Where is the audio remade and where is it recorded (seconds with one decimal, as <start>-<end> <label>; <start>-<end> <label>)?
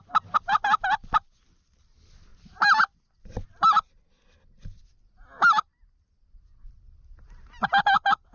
0.0-8.3 recorded